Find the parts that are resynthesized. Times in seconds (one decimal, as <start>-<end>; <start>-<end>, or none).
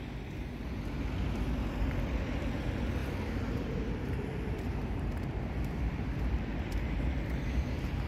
3.0-8.1